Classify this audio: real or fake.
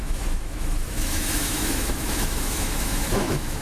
fake